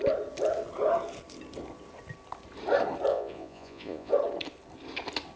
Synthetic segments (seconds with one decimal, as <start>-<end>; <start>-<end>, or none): 3.1-4.1